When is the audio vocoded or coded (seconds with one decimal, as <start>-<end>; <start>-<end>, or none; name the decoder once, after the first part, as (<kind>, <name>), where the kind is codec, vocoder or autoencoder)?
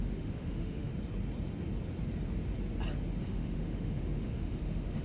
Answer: 0.0-0.9 (autoencoder, DAC-VAE); 3.2-5.0